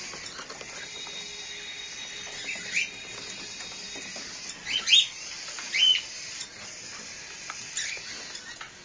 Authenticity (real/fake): real